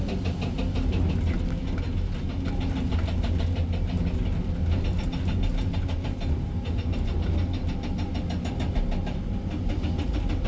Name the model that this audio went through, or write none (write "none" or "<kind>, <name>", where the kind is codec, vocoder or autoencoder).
none